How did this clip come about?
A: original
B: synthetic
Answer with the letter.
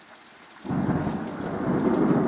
A